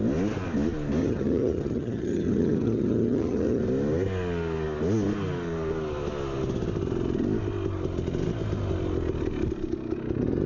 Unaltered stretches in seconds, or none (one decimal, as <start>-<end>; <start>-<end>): 0.0-1.0; 3.6-10.5